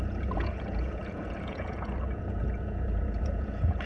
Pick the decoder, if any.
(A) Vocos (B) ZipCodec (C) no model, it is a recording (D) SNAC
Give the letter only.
A